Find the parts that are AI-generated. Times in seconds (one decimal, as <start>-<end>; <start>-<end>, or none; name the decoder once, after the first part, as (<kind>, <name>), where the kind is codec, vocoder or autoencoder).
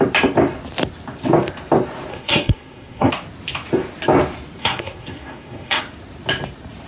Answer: 2.1-3.1 (codec, SNAC); 4.6-5.8